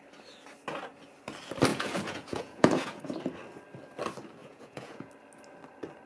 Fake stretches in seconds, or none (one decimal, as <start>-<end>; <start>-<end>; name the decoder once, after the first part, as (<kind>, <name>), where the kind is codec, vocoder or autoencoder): 1.7-3.0 (vocoder, Vocos); 4.4-5.1